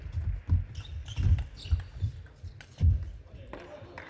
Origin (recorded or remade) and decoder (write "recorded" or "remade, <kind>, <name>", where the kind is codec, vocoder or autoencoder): recorded